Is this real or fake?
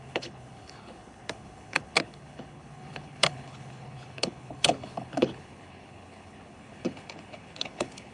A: fake